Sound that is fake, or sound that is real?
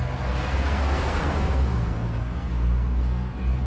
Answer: fake